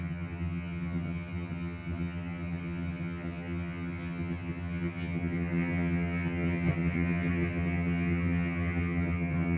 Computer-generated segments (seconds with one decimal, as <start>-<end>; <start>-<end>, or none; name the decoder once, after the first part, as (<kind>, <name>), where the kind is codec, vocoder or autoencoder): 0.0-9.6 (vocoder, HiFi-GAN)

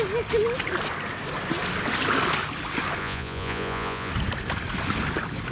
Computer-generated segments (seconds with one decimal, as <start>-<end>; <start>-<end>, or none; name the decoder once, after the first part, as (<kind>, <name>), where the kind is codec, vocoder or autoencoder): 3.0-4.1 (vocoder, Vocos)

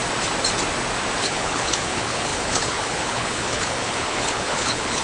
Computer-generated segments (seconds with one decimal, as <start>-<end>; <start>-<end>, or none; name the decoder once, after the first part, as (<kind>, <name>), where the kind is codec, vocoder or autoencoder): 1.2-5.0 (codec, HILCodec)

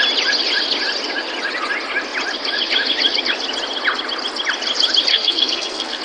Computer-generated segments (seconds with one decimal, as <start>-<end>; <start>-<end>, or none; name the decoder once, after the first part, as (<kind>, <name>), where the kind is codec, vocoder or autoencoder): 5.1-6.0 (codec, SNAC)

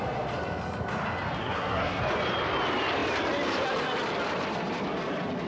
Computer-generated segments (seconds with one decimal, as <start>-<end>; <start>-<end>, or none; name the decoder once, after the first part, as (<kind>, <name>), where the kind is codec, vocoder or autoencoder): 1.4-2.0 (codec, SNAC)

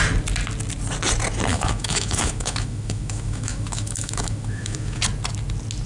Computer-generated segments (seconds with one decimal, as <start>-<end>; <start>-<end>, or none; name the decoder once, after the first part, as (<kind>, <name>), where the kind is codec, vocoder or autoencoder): 1.5-5.0 (autoencoder, DAC-VAE)